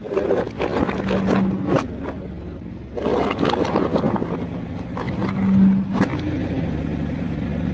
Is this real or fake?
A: real